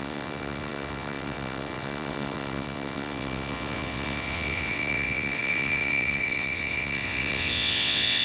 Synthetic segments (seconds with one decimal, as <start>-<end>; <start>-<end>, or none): 0.0-8.2